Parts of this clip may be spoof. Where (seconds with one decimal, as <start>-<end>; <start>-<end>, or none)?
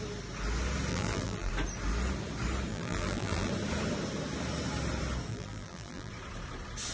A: 0.9-1.5; 2.7-3.5; 5.3-6.1